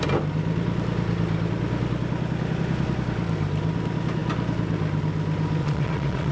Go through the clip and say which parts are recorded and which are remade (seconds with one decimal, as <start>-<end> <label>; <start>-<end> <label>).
0.0-5.6 recorded; 5.6-6.3 remade